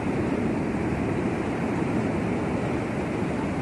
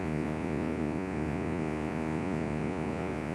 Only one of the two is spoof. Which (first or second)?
second